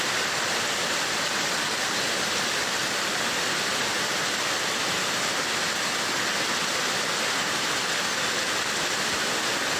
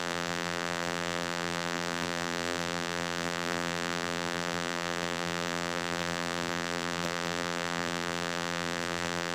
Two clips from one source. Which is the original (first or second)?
first